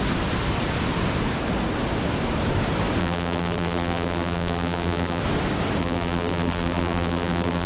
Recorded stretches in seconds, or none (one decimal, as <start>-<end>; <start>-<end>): 0.0-3.0; 5.2-5.8